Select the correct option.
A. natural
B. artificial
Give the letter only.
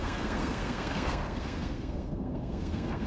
B